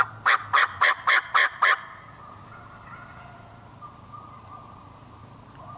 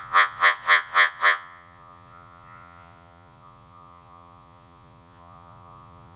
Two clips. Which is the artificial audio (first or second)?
second